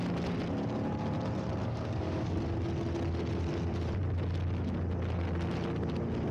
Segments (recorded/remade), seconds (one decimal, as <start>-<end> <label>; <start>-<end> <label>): 0.0-1.6 recorded; 1.6-2.4 remade; 2.4-6.3 recorded